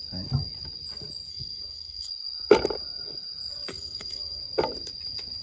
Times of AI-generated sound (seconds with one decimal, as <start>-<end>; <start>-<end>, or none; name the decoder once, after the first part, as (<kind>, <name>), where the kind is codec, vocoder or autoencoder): 1.3-2.1 (codec, SNAC); 3.7-4.4